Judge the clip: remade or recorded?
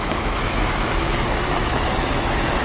remade